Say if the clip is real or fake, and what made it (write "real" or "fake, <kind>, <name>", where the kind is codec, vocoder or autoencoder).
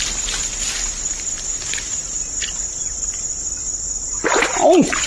real